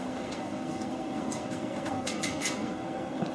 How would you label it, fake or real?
fake